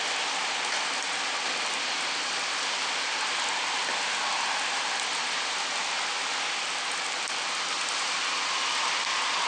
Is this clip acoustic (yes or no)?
yes